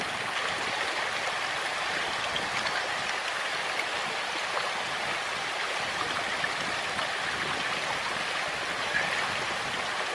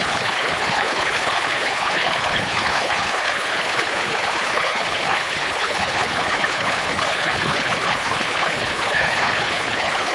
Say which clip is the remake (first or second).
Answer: second